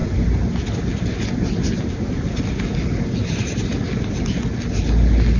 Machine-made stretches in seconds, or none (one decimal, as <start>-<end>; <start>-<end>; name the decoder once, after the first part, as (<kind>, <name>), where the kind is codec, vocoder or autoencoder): none